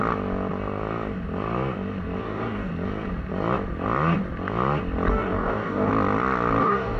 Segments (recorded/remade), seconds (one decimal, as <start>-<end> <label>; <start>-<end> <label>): 0.0-2.2 recorded; 2.2-2.7 remade; 2.7-5.1 recorded; 5.1-5.9 remade; 5.9-6.6 recorded; 6.6-7.0 remade